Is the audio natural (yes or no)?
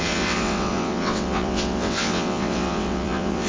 no